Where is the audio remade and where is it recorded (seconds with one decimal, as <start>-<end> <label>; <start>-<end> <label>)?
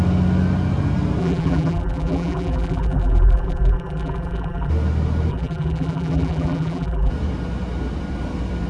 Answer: 0.0-1.2 recorded; 1.2-4.7 remade; 4.7-5.3 recorded; 5.3-7.1 remade; 7.1-8.7 recorded